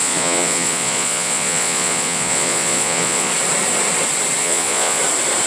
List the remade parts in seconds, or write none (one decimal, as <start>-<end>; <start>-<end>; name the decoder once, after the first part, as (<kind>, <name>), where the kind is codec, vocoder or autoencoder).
0.0-3.3 (vocoder, Vocos); 4.4-5.0